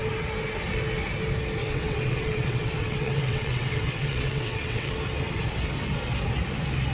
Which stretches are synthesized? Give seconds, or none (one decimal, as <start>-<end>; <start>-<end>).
1.6-4.9